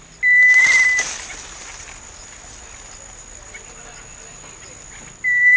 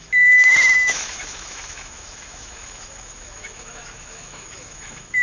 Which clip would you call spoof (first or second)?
second